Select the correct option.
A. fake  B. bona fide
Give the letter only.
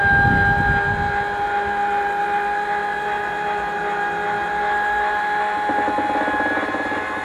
B